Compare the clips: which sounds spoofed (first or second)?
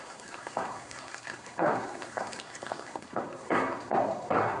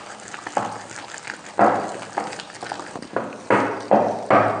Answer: first